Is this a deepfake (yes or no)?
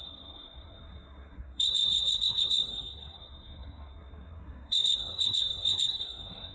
yes